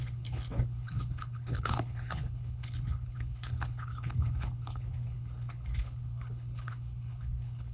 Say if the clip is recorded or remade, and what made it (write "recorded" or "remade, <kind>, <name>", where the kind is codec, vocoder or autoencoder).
remade, codec, HILCodec